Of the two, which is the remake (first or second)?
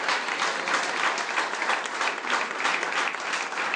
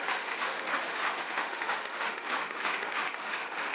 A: second